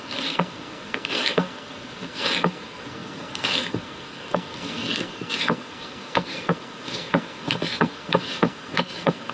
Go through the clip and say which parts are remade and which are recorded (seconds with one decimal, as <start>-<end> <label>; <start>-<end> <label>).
0.0-9.3 remade

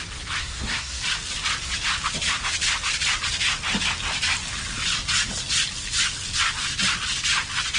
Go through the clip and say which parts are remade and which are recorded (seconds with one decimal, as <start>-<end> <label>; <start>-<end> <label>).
0.0-0.4 recorded; 0.4-1.0 remade; 1.0-7.8 recorded

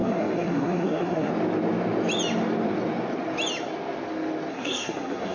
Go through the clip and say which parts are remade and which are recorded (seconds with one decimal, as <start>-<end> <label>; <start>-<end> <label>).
0.0-1.3 remade; 1.3-4.5 recorded; 4.5-5.3 remade